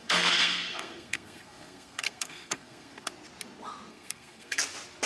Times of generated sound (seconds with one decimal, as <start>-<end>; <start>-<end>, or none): 0.0-3.1; 3.9-4.6